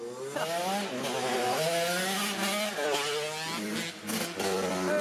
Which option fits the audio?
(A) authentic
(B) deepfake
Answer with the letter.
A